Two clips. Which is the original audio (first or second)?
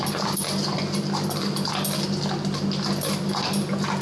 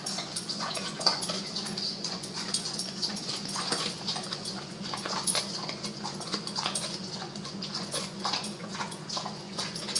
first